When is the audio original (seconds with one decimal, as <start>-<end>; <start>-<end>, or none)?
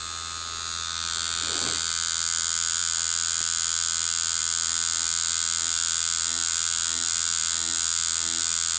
0.0-8.8